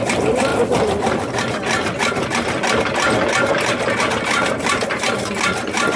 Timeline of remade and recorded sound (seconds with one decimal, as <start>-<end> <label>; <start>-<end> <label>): 0.0-6.0 recorded

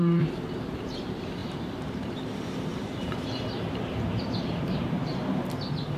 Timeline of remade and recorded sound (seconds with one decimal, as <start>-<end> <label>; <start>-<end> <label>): 0.0-6.0 remade

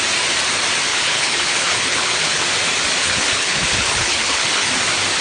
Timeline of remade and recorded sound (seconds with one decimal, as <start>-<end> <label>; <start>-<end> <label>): 0.0-0.9 recorded; 0.9-2.5 remade; 2.5-3.0 recorded; 3.0-4.7 remade; 4.7-5.2 recorded

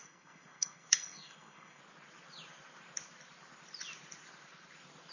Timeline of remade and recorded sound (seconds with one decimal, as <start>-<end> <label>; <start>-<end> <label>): 0.0-1.8 remade; 1.8-5.1 recorded

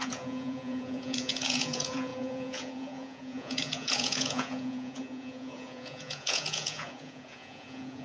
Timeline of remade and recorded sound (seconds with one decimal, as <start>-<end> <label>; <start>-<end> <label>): 0.0-8.0 remade

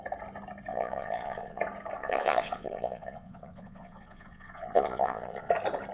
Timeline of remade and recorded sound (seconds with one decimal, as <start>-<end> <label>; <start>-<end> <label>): 0.0-0.7 recorded; 0.7-1.6 remade; 1.6-2.0 recorded; 2.0-5.5 remade; 5.5-5.9 recorded

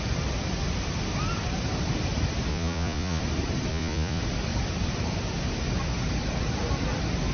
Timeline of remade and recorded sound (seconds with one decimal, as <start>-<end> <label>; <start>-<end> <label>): 0.0-2.5 recorded; 2.5-3.2 remade; 3.2-3.7 recorded; 3.7-4.2 remade; 4.2-7.3 recorded